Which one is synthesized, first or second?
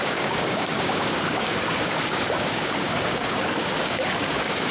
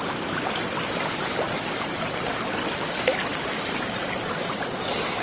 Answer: first